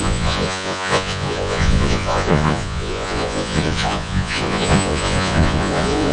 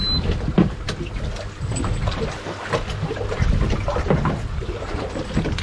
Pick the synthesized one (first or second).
first